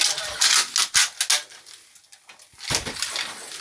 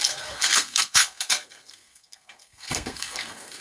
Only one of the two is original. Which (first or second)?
first